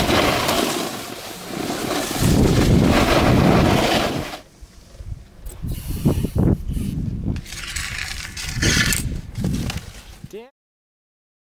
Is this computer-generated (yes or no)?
no